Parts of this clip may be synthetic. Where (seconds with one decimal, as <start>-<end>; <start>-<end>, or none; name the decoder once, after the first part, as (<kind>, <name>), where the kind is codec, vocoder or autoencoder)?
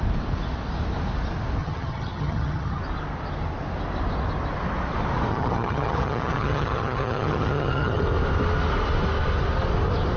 1.6-2.8 (vocoder, HiFi-GAN); 5.3-8.0